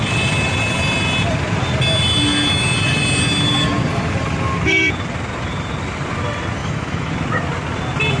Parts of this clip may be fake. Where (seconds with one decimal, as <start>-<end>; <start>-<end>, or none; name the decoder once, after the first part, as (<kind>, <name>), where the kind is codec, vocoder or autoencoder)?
6.6-7.1 (autoencoder, DAC-VAE)